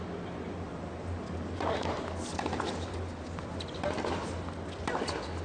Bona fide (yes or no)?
yes